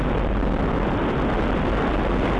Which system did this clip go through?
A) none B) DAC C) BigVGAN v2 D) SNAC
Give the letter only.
A